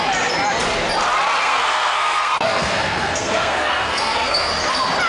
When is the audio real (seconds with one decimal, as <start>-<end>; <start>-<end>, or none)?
0.0-1.4; 4.5-5.1